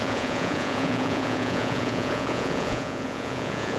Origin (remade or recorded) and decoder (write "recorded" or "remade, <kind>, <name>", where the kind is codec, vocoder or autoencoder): remade, vocoder, Vocos